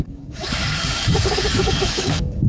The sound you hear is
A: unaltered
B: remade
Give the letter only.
B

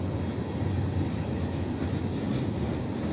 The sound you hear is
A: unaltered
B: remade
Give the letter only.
A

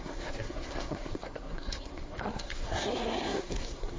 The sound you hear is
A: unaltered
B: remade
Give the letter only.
B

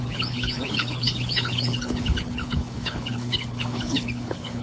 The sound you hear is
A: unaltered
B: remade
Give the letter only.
B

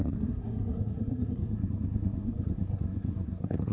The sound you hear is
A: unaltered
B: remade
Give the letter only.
B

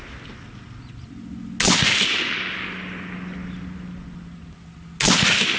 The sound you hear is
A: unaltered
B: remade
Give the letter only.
A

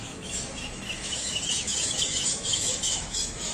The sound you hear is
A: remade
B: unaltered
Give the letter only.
A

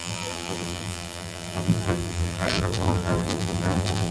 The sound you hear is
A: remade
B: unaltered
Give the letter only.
A